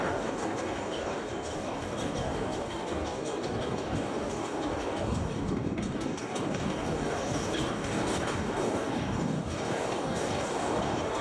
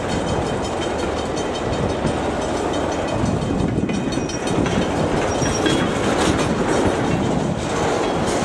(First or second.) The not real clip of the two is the first